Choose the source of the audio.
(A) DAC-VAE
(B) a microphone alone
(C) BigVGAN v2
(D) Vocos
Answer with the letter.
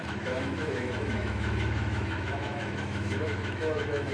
A